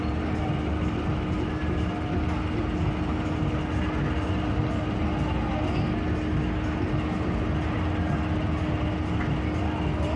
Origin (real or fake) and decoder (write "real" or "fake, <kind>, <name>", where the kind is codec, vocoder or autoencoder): real